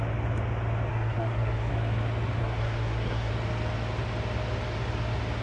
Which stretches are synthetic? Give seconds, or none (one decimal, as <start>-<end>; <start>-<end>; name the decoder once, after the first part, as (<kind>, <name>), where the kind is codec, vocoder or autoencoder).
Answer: 0.9-1.7 (codec, SNAC); 2.4-3.3